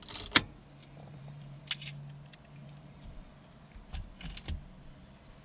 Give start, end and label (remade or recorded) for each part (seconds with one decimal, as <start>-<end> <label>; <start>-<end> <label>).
0.0-0.8 recorded; 0.8-1.6 remade; 1.6-2.6 recorded; 2.6-3.3 remade; 3.3-5.4 recorded

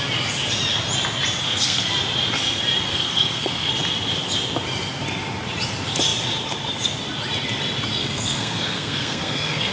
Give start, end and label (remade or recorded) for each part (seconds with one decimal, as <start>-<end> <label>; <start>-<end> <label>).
0.0-1.4 recorded; 1.4-1.9 remade; 1.9-2.9 recorded; 2.9-3.7 remade; 3.7-8.0 recorded; 8.0-9.7 remade

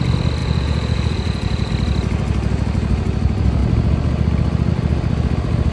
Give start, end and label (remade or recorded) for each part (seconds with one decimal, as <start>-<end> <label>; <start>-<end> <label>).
0.0-0.4 recorded; 0.4-1.7 remade; 1.7-5.7 recorded

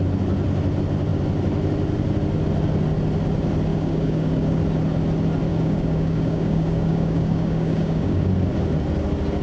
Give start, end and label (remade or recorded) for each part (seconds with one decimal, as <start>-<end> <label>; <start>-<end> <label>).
0.0-3.7 recorded; 3.7-4.6 remade; 4.6-5.5 recorded; 5.5-8.3 remade; 8.3-9.4 recorded

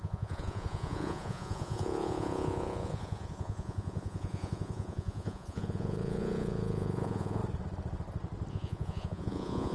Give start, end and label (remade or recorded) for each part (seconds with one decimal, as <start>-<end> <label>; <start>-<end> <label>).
0.0-7.4 remade; 7.4-8.5 recorded; 8.5-9.7 remade

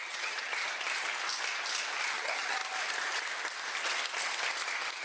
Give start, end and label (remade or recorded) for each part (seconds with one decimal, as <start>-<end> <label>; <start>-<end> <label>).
0.0-0.5 remade; 0.5-2.1 recorded; 2.1-2.6 remade; 2.6-5.0 recorded